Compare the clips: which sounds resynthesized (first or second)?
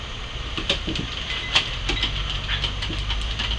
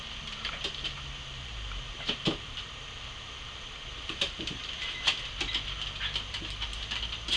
second